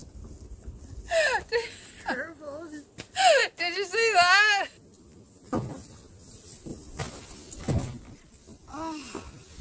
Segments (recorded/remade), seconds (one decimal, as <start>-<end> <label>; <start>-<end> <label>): 0.0-1.4 recorded; 1.4-3.4 remade; 3.4-5.3 recorded; 5.3-6.7 remade; 6.7-7.7 recorded; 7.7-8.5 remade; 8.5-9.6 recorded